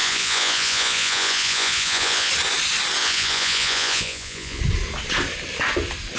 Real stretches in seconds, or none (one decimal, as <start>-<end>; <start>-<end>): 2.3-3.0; 4.6-6.2